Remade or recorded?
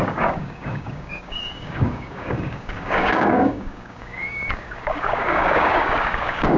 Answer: remade